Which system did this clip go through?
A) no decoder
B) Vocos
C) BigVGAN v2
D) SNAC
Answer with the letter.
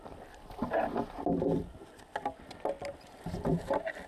A